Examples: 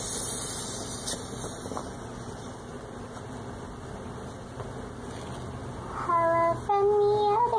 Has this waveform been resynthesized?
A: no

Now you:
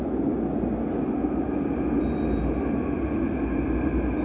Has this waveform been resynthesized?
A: no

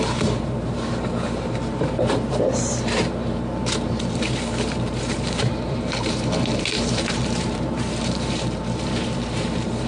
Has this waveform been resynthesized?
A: yes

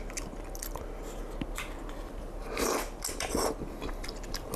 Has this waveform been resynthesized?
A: no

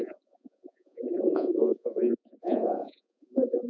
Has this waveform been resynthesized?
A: yes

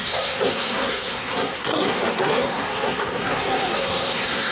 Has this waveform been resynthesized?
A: yes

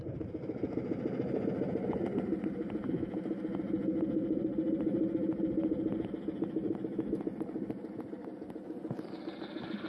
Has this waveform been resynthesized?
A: no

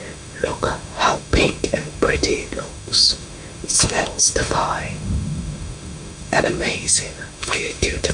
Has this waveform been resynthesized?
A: yes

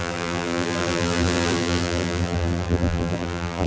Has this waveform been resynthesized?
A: yes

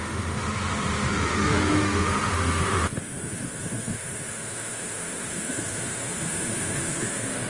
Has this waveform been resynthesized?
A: yes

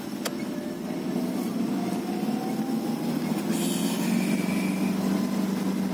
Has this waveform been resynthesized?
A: no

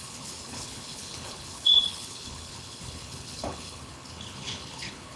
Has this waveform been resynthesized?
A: yes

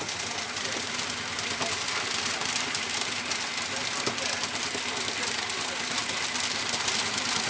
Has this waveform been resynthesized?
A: no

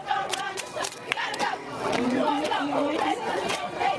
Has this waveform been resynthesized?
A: yes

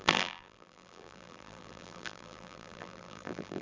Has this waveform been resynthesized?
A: yes